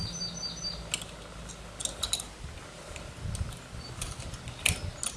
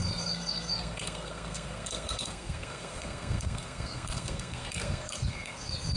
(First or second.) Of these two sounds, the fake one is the second